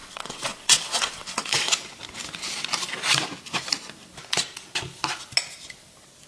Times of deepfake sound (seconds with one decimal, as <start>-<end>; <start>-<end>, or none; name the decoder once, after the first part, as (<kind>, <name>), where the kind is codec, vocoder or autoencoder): 0.0-1.7 (vocoder, WaveNeXt)